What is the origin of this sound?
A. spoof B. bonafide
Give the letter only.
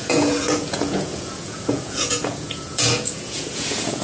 A